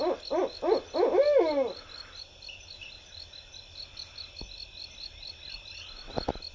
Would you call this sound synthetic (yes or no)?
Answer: no